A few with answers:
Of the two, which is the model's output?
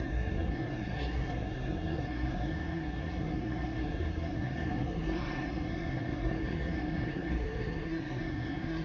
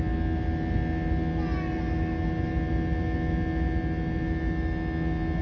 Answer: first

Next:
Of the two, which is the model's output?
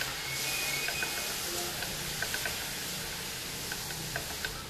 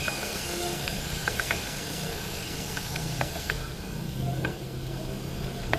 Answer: second